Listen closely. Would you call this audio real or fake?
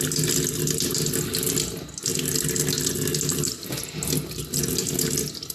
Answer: real